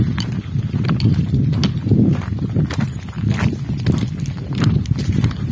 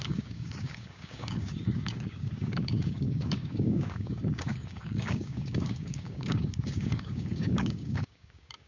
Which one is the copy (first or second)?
second